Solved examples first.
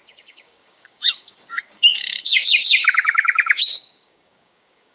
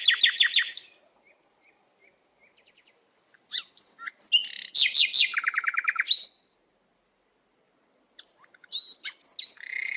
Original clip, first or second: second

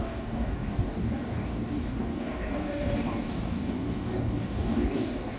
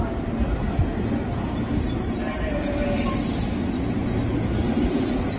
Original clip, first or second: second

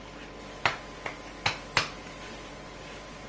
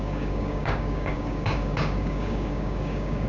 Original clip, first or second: first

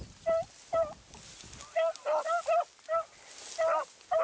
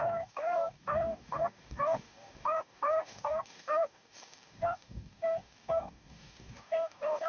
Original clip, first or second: first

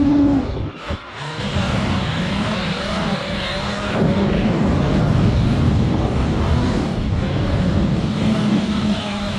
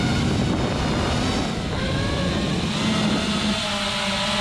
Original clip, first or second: second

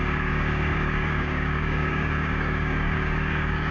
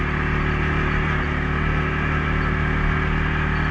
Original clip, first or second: second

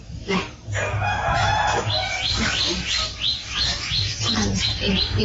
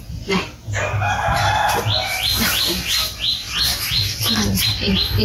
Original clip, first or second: second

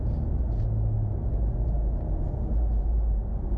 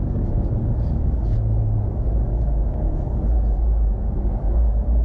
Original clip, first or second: first